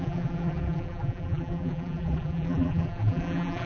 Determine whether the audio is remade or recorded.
remade